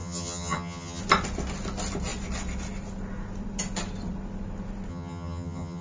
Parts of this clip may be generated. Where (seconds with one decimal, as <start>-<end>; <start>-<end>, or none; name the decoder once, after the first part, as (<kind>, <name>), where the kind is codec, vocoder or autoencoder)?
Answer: 0.0-1.0 (vocoder, HiFi-GAN); 4.9-5.8